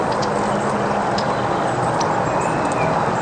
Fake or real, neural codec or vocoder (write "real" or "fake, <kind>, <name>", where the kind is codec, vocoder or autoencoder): real